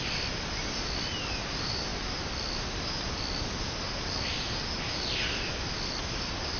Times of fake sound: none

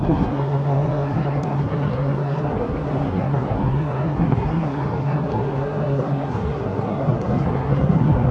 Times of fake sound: 0.0-8.3 (codec, SNAC)

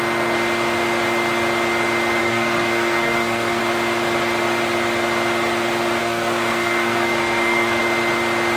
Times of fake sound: 2.2-3.6 (codec, SNAC); 6.0-7.8

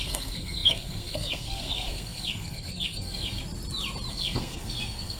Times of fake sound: 0.0-3.4 (codec, SNAC); 4.1-5.2

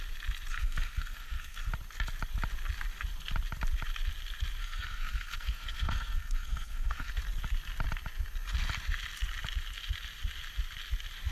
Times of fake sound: 0.5-1.7 (codec, SNAC); 4.6-7.1